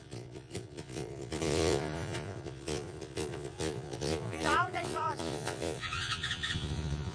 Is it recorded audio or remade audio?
remade